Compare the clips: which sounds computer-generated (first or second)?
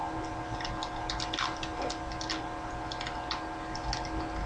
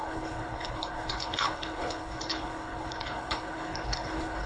second